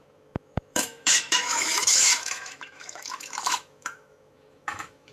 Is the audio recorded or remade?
remade